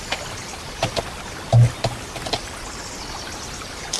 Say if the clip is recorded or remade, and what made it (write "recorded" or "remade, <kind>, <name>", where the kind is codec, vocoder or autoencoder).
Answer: recorded